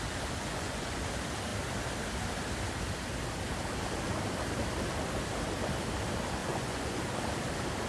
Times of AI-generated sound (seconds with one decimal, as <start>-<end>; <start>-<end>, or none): 0.4-1.0; 6.4-7.0